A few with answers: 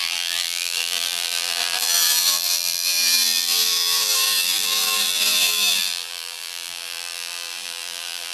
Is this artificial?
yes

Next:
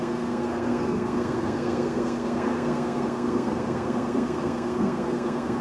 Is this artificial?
yes